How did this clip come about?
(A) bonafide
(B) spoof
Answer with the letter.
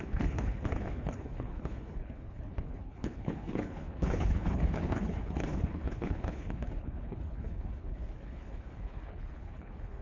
B